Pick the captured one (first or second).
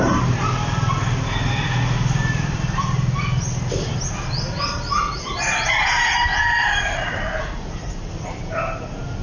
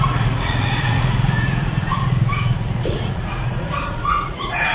first